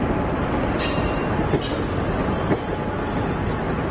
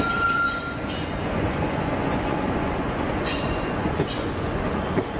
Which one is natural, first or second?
first